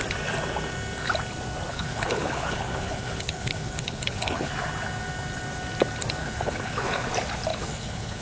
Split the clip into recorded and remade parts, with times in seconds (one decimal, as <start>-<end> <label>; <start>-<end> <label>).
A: 0.0-1.7 recorded; 1.7-4.5 remade; 4.5-6.2 recorded; 6.2-7.1 remade; 7.1-7.5 recorded; 7.5-8.2 remade